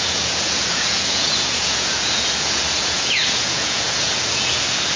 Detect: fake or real fake